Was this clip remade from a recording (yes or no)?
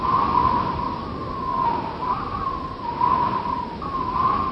no